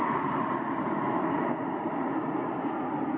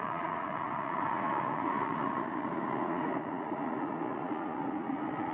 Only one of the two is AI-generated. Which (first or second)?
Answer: second